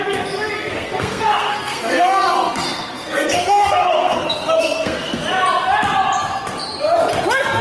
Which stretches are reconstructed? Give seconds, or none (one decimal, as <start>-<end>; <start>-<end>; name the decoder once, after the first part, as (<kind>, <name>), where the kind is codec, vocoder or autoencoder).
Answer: 0.0-5.2 (codec, SNAC)